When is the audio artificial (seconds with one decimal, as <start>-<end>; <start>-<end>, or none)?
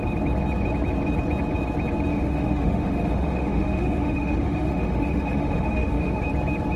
2.1-6.2